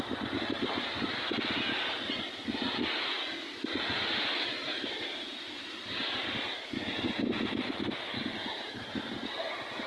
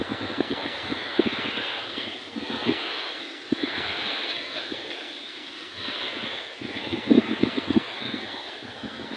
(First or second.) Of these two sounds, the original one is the first